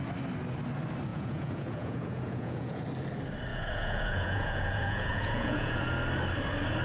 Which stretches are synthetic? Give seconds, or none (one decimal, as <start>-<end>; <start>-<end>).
1.1-2.9; 3.5-5.8